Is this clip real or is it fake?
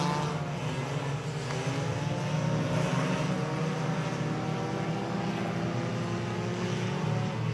real